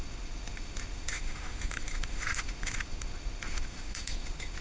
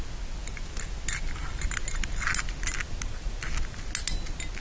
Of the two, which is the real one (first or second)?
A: second